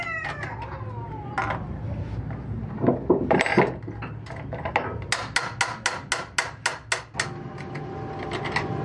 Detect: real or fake real